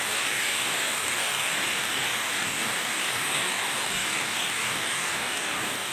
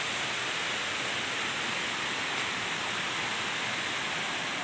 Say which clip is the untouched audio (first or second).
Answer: second